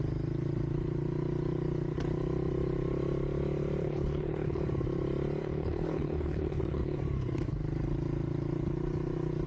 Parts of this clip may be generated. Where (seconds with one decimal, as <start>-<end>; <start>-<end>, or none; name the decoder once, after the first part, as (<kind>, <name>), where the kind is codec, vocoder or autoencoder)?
3.8-4.6 (codec, HILCodec); 5.4-7.0